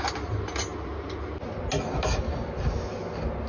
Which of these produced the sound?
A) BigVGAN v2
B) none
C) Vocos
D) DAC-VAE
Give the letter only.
B